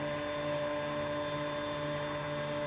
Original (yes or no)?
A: yes